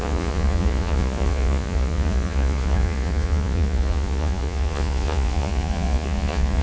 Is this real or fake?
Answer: fake